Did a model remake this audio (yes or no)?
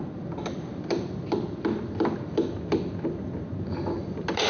no